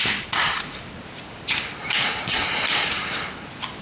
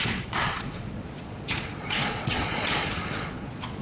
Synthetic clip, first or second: second